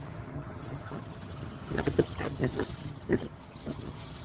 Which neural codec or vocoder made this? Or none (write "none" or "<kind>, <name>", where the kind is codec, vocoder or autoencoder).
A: vocoder, HiFi-GAN